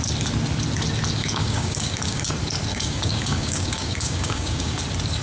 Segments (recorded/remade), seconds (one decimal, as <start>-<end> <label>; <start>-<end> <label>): 0.0-1.2 recorded; 1.2-2.3 remade; 2.3-2.7 recorded; 2.7-4.8 remade; 4.8-5.2 recorded